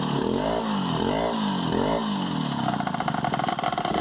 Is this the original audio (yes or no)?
yes